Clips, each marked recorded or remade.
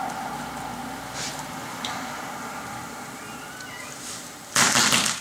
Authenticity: recorded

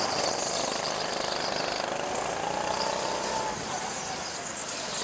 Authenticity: recorded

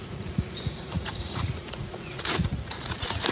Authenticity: remade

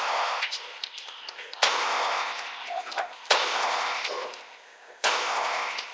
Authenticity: remade